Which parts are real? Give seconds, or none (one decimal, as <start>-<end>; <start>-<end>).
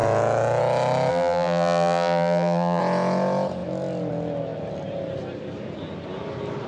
0.0-1.1; 2.8-6.7